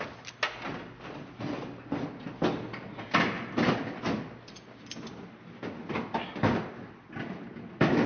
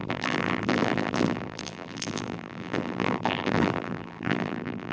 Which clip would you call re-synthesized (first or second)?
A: second